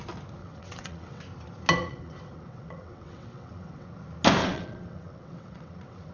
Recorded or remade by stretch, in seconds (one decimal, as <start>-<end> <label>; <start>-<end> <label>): 0.0-0.4 recorded; 0.4-1.2 remade; 1.2-1.8 recorded; 1.8-3.9 remade; 3.9-4.4 recorded; 4.4-6.1 remade